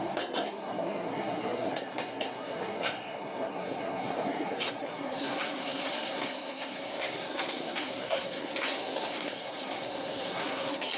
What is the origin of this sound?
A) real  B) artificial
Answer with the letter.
B